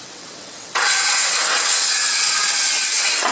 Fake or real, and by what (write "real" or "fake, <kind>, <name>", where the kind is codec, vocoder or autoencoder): fake, vocoder, WaveNeXt